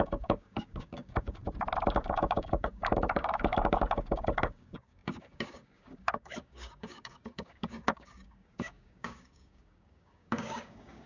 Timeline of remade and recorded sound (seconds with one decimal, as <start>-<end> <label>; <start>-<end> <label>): 0.0-1.4 remade; 1.4-2.0 recorded; 2.0-11.1 remade